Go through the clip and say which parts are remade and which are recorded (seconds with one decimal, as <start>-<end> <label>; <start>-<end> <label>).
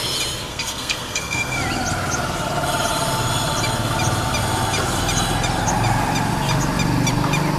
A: 0.0-0.5 recorded; 0.5-1.6 remade; 1.6-7.6 recorded